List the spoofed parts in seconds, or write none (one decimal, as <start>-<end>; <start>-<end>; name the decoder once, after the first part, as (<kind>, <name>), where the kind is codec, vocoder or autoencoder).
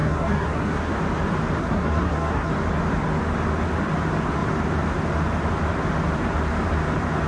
0.0-0.9 (codec, SNAC); 1.6-2.5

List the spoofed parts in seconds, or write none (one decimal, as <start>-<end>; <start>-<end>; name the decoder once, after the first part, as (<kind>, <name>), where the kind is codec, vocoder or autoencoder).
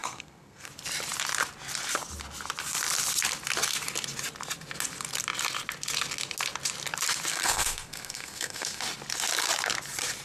0.0-0.7 (codec, SNAC); 7.3-8.8